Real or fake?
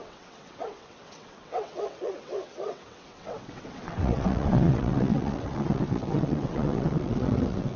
fake